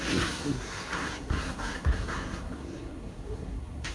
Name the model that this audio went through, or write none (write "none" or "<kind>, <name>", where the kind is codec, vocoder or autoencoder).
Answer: codec, SNAC